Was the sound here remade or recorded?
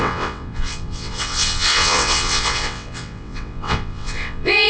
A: remade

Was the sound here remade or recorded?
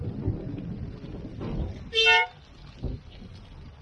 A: recorded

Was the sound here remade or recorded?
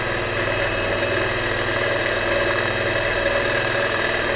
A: recorded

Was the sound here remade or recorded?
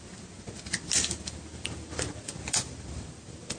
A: remade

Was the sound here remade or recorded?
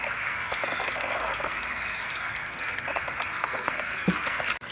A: remade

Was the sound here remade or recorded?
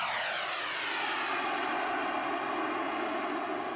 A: recorded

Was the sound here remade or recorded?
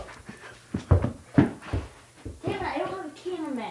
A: recorded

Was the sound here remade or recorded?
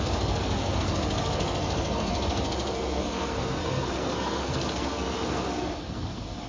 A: remade